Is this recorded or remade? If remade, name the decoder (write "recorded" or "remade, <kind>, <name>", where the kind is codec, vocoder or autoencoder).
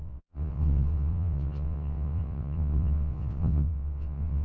remade, vocoder, WaveNeXt